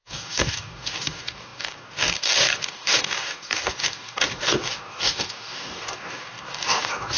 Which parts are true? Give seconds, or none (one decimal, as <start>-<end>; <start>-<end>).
none